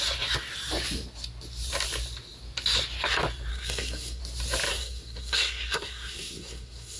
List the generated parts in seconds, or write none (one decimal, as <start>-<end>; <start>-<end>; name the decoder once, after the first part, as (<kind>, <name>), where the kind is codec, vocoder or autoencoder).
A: 3.5-4.2 (codec, SNAC); 4.7-7.0